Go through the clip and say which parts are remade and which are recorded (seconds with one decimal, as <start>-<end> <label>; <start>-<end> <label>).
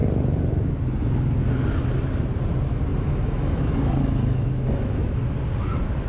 0.0-2.9 recorded; 2.9-5.2 remade; 5.2-6.1 recorded